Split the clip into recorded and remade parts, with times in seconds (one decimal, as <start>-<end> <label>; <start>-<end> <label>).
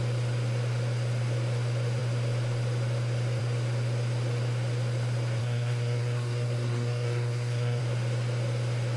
0.0-5.4 recorded; 5.4-7.8 remade; 7.8-9.0 recorded